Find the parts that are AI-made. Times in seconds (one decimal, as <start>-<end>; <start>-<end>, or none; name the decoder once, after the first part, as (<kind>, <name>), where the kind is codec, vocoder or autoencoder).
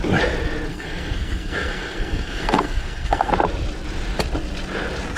0.7-3.3 (codec, SNAC)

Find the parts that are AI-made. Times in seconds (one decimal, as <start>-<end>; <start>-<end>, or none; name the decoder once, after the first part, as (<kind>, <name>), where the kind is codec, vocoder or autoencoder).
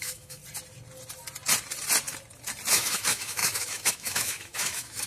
0.0-0.4 (autoencoder, DAC-VAE); 2.7-5.1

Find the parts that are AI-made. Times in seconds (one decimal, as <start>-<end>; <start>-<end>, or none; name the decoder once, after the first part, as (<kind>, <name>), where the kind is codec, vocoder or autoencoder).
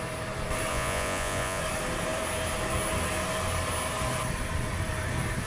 0.7-1.6 (vocoder, Vocos)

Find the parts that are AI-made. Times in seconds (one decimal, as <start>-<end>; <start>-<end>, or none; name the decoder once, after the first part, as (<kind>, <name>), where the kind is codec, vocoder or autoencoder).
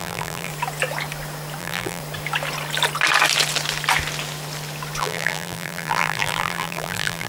0.0-0.5 (vocoder, BigVGAN v2); 1.6-2.0; 5.0-7.3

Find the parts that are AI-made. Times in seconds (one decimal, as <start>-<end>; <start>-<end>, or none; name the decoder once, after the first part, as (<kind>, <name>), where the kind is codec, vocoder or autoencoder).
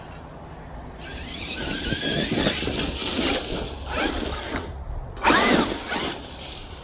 1.1-1.8 (vocoder, BigVGAN v2)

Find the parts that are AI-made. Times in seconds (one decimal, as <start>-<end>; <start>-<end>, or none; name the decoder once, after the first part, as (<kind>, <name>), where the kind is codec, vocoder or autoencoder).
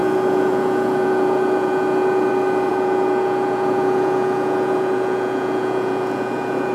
0.0-2.3 (vocoder, Vocos); 2.7-6.7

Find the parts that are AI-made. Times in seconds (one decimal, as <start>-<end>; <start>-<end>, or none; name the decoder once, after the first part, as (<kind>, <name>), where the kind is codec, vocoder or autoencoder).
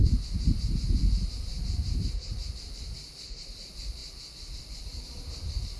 0.0-4.0 (vocoder, BigVGAN v2); 4.6-5.8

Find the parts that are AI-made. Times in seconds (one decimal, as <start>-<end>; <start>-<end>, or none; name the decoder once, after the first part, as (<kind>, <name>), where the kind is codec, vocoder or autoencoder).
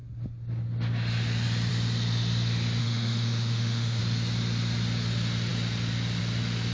2.8-4.0 (autoencoder, DAC-VAE)